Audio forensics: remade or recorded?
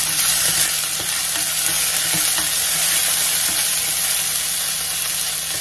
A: recorded